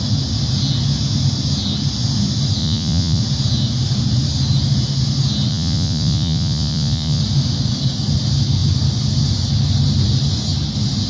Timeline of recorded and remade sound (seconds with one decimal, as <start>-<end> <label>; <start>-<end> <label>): 0.0-2.6 recorded; 2.6-3.2 remade; 3.2-5.5 recorded; 5.5-7.2 remade; 7.2-11.1 recorded